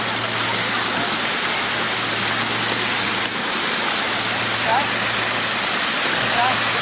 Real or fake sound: real